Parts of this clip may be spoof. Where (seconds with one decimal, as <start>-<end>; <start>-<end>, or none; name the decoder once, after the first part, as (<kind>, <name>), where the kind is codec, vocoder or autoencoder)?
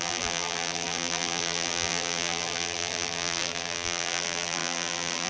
0.0-5.3 (vocoder, BigVGAN v2)